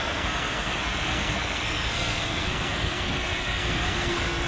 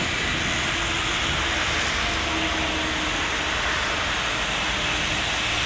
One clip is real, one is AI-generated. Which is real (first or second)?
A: second